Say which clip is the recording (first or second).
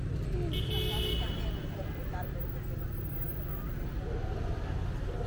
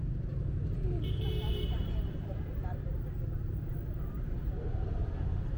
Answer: first